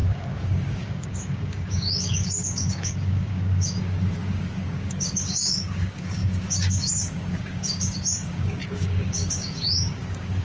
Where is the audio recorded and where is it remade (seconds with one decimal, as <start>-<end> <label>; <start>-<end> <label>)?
0.0-10.4 remade